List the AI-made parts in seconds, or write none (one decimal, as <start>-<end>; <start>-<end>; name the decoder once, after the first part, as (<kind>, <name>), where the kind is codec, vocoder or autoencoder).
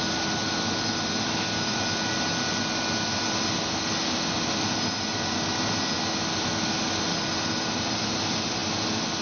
none